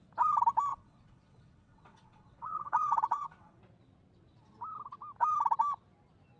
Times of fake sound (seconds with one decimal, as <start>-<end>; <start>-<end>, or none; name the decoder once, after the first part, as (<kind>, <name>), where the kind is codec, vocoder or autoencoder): 0.7-3.6 (vocoder, WaveNeXt)